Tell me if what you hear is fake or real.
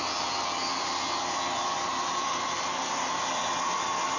fake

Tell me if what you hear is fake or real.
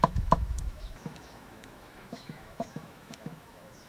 fake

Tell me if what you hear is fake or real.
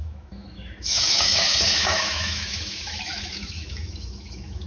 fake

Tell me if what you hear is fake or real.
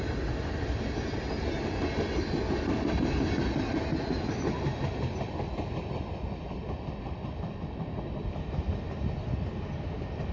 real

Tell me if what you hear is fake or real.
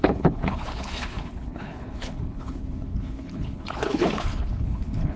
fake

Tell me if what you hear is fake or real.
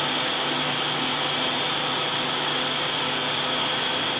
real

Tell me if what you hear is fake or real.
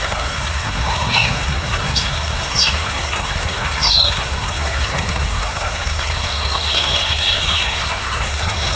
fake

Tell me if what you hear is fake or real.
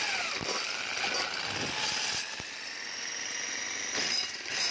real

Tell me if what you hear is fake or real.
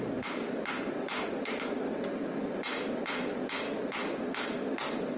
real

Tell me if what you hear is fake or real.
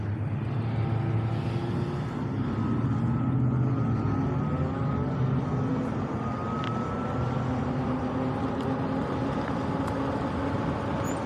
real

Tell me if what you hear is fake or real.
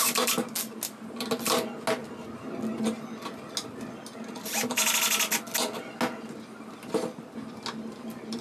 real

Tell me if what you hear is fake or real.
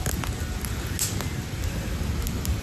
real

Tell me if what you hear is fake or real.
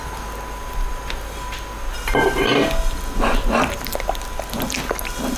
real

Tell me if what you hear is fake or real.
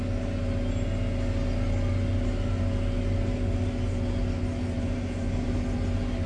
real